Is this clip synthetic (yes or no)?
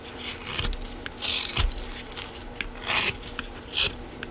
no